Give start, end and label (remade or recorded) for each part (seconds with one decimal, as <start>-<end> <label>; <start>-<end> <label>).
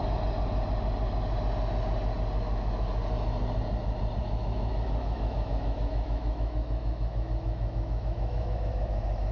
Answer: 0.0-4.2 recorded; 4.2-9.3 remade